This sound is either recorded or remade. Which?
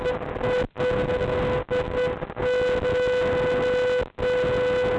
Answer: recorded